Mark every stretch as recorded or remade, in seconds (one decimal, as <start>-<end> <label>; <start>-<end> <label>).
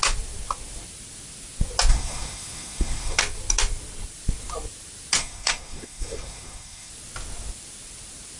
0.0-1.9 recorded; 1.9-3.2 remade; 3.2-5.2 recorded; 5.2-6.9 remade; 6.9-8.4 recorded